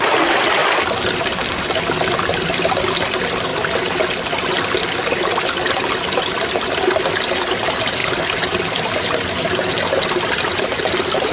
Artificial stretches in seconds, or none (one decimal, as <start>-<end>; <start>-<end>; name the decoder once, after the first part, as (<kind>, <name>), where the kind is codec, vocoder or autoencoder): none